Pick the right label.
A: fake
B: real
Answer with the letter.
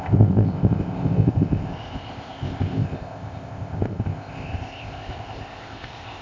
A